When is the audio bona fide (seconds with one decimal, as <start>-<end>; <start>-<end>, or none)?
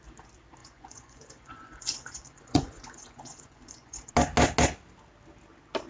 0.0-0.6; 4.1-5.9